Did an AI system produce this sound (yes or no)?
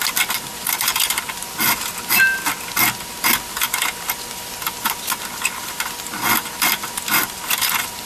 no